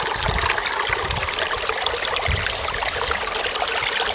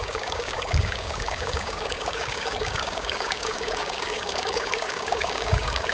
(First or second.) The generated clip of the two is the second